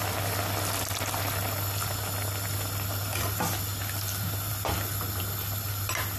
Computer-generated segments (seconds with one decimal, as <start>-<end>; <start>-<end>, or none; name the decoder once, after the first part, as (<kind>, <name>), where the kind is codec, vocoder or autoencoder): none